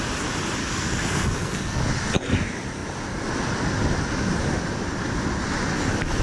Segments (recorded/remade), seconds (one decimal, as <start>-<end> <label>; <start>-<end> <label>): 0.0-0.6 recorded; 0.6-1.8 remade; 1.8-6.2 recorded